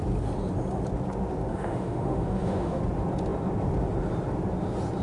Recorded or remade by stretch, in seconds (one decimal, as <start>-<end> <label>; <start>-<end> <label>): 0.0-1.5 recorded; 1.5-2.8 remade; 2.8-5.0 recorded